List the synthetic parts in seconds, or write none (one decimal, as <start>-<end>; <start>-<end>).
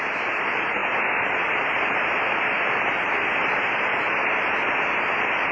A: none